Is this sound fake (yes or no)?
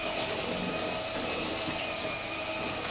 no